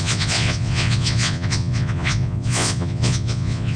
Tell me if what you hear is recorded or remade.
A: remade